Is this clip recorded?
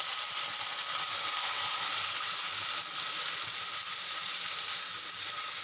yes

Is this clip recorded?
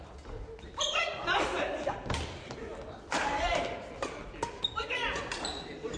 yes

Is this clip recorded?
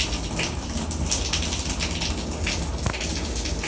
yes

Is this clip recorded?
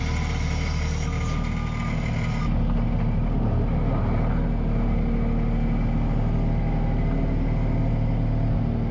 yes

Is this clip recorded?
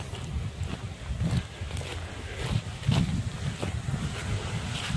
yes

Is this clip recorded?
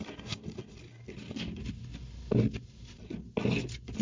yes